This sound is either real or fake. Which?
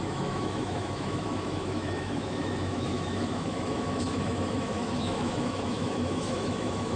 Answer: fake